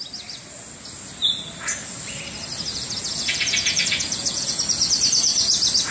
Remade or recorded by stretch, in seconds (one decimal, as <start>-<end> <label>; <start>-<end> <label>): 0.0-2.7 recorded; 2.7-4.6 remade; 4.6-5.9 recorded